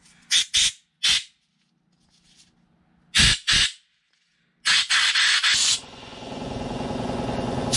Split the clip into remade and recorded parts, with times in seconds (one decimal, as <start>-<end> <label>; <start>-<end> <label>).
0.0-5.5 recorded; 5.5-7.8 remade